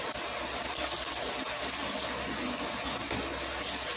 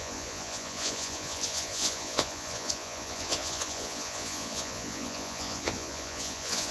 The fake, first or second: second